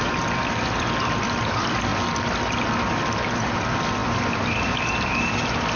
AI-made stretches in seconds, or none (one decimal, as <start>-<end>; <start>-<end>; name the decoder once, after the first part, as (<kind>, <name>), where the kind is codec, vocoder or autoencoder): none